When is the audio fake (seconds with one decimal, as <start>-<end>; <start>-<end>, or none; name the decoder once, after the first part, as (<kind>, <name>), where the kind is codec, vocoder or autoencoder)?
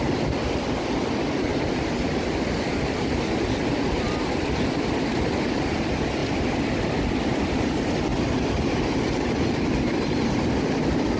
none